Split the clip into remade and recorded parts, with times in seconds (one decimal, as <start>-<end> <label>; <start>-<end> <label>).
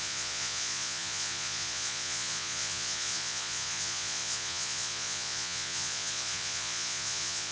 0.0-7.5 remade